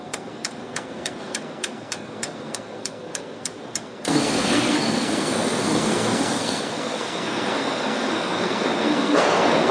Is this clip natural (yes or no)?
no